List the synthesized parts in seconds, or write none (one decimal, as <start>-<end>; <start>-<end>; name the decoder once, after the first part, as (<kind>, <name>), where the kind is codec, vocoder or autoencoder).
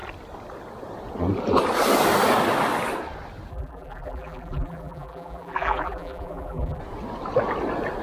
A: 3.5-6.8 (vocoder, BigVGAN v2)